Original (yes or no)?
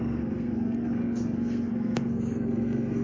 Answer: no